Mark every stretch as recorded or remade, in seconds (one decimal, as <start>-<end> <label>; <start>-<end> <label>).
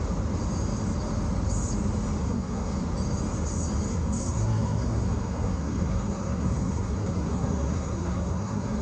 0.0-2.2 recorded; 2.2-2.7 remade; 2.7-3.9 recorded; 3.9-8.8 remade